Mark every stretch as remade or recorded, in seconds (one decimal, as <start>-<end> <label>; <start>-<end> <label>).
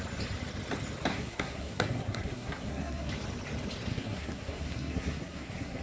0.0-1.1 recorded; 1.1-3.1 remade; 3.1-3.9 recorded; 3.9-5.8 remade